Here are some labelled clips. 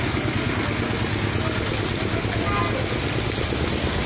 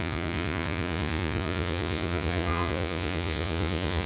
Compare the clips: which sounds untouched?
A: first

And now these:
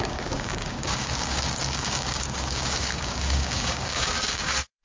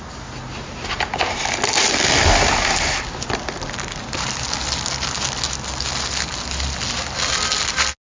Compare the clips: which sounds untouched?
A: second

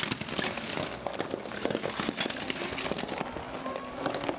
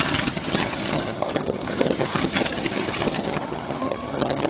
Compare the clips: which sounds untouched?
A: first